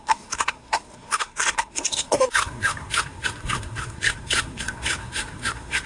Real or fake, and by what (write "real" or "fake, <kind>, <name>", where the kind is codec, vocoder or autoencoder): fake, codec, SNAC